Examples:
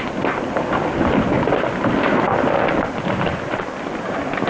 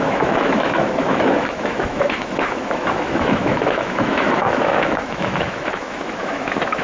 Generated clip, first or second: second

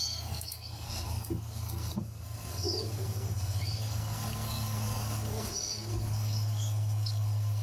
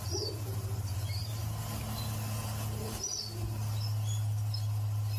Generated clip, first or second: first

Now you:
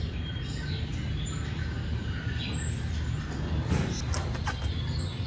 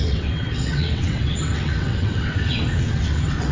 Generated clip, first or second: second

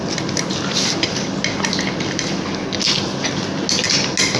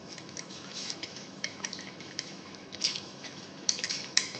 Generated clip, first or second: second